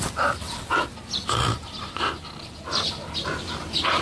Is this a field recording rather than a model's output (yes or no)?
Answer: yes